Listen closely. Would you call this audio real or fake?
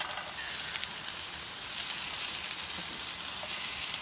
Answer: fake